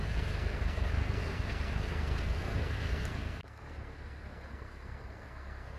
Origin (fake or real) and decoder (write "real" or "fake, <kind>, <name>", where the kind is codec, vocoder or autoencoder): fake, codec, SNAC